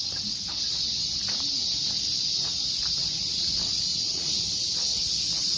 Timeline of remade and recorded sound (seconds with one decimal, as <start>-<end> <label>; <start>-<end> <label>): 0.0-3.9 recorded; 3.9-4.4 remade; 4.4-5.6 recorded